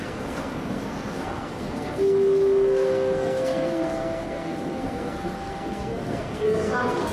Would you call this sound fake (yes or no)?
yes